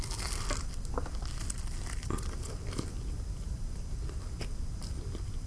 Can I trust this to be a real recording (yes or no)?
yes